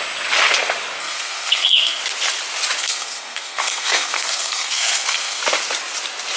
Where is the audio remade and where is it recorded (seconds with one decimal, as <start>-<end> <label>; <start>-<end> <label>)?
0.0-1.0 recorded; 1.0-2.0 remade; 2.0-2.8 recorded; 2.8-5.4 remade; 5.4-6.4 recorded